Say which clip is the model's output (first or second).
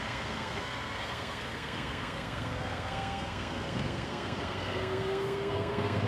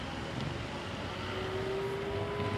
first